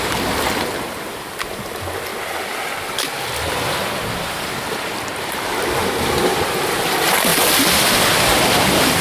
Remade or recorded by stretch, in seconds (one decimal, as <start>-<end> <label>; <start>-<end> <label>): 0.0-2.1 remade; 2.1-5.3 recorded; 5.3-7.3 remade; 7.3-8.2 recorded; 8.2-9.0 remade